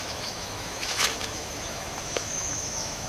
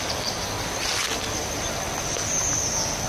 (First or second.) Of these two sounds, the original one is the second